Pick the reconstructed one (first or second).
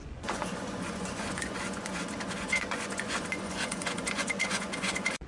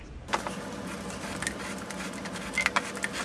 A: first